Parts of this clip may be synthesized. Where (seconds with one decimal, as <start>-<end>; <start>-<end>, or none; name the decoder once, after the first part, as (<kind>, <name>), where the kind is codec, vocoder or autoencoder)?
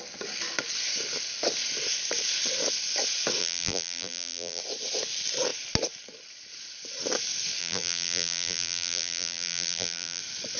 3.4-4.6 (vocoder, BigVGAN v2); 7.6-10.2